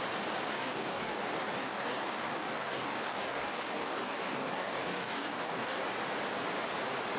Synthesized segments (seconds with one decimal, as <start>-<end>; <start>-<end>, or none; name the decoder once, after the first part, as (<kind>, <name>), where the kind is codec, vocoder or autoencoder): 0.5-1.2 (codec, DAC); 1.6-5.8